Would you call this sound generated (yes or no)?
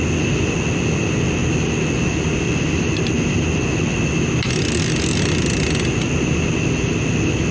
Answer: no